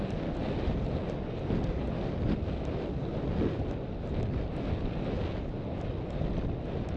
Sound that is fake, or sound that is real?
real